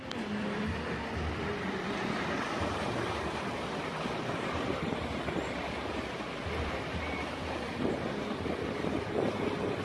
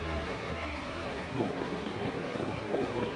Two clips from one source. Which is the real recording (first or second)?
first